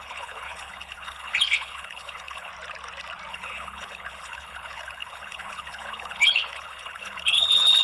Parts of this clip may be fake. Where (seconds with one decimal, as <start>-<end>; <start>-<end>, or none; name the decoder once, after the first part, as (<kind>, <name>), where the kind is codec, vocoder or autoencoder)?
0.0-2.5 (codec, HILCodec); 3.3-7.8